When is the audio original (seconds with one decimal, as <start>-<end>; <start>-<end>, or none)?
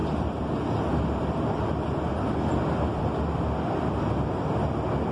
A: 0.0-0.9; 4.0-5.1